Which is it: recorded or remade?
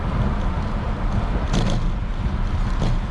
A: recorded